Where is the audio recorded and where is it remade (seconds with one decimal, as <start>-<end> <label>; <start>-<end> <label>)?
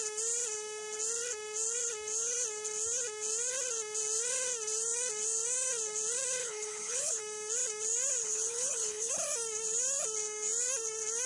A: 0.0-6.4 recorded; 6.4-7.2 remade; 7.2-8.2 recorded; 8.2-9.1 remade; 9.1-11.3 recorded